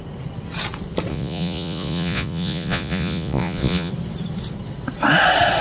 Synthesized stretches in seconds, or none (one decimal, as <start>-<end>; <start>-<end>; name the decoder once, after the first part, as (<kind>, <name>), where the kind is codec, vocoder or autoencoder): 1.1-3.9 (vocoder, Vocos)